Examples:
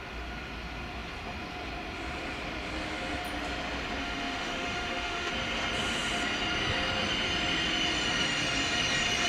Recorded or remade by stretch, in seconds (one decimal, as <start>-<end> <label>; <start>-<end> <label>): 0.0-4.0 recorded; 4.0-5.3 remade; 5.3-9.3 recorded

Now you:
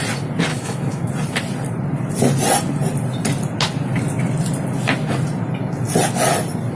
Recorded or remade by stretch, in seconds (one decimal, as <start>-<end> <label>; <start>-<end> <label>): 0.0-0.5 recorded; 0.5-1.1 remade; 1.1-6.7 recorded

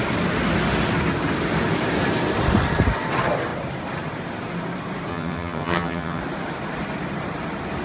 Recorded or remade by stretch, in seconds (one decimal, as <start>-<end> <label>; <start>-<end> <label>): 0.0-5.1 recorded; 5.1-6.2 remade; 6.2-7.8 recorded

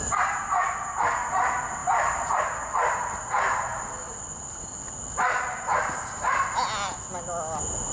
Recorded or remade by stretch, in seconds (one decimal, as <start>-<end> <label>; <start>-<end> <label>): 0.0-1.8 recorded; 1.8-2.4 remade; 2.4-7.9 recorded